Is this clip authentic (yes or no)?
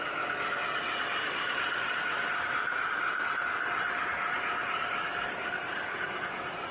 yes